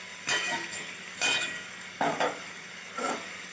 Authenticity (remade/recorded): remade